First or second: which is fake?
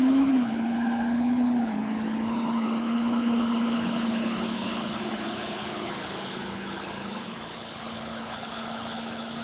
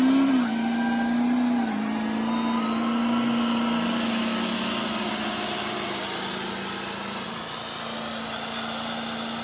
first